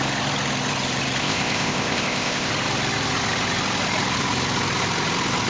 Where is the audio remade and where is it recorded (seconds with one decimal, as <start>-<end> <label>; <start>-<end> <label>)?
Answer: 0.0-1.2 recorded; 1.2-2.5 remade; 2.5-5.5 recorded